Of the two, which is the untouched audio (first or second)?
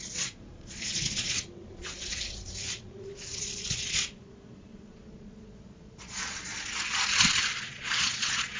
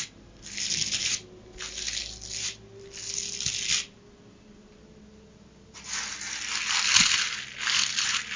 second